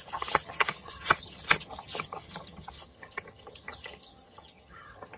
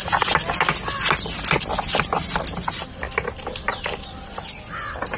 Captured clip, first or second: second